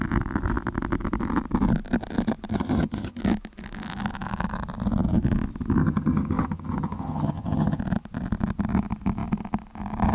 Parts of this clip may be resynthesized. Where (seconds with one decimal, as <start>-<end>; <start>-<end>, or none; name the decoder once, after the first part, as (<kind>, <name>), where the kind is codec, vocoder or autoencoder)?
2.5-3.2 (vocoder, HiFi-GAN); 5.8-7.8